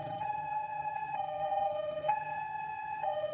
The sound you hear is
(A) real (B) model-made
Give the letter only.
B